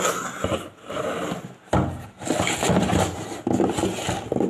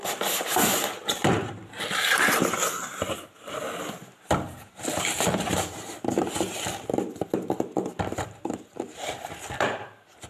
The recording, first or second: first